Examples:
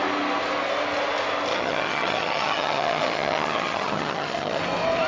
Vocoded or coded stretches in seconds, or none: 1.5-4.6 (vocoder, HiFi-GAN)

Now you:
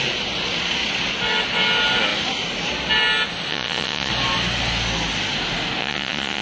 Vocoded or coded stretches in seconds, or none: 3.5-4.1 (vocoder, Vocos); 5.8-6.4

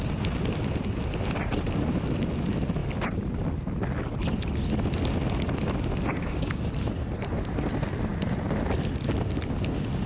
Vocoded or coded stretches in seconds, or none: 6.1-6.6 (codec, DAC)

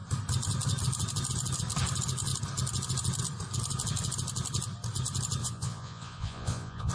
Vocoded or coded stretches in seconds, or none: 5.4-6.9 (vocoder, Vocos)

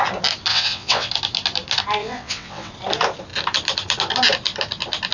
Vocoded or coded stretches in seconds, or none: 0.5-1.1 (vocoder, WaveNeXt); 2.0-2.7